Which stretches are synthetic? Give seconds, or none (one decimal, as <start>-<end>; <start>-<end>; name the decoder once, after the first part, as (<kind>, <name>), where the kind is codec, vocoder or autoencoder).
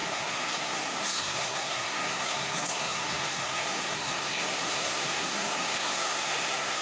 0.0-6.8 (codec, SNAC)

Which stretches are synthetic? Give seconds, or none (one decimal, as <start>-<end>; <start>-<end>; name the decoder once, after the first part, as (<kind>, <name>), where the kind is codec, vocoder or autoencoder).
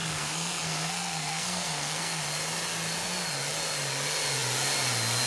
0.0-2.2 (codec, SNAC)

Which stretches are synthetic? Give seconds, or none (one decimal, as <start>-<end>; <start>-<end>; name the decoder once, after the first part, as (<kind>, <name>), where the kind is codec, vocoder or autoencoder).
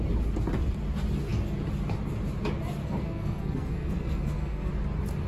2.8-4.7 (codec, SNAC)